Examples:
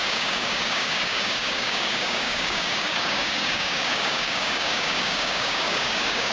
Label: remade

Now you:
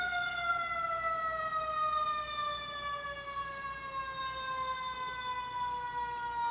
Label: recorded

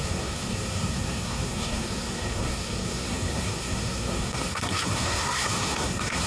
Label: remade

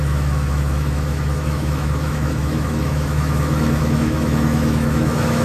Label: remade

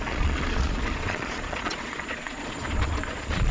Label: remade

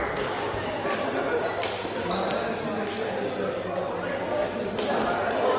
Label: recorded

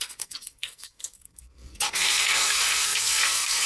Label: remade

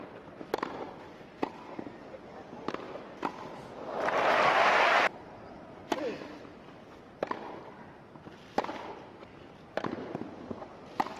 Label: recorded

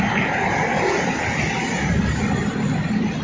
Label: recorded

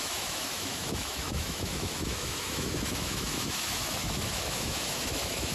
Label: remade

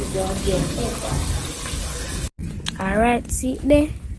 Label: recorded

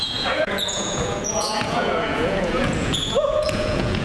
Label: remade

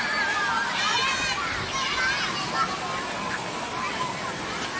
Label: recorded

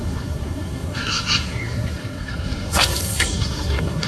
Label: remade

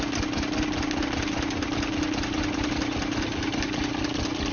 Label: recorded